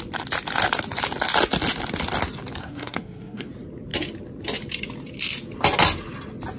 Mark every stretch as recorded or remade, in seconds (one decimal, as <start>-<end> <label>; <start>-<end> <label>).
0.0-2.6 recorded; 2.6-3.5 remade; 3.5-6.6 recorded